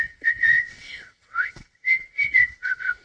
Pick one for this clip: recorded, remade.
remade